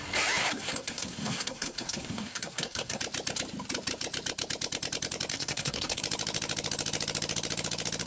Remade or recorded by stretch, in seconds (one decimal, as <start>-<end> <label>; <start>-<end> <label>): 0.0-0.4 recorded; 0.4-3.0 remade; 3.0-5.3 recorded; 5.3-6.0 remade; 6.0-8.1 recorded